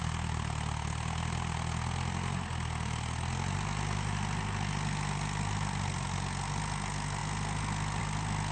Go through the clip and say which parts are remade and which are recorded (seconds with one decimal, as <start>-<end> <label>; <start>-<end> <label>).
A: 0.0-8.5 recorded